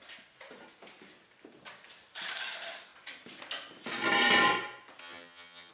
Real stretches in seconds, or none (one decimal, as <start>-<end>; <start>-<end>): 0.0-5.0